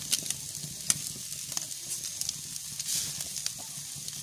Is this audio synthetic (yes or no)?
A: no